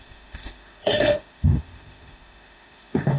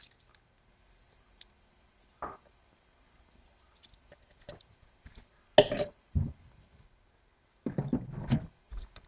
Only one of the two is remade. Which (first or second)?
first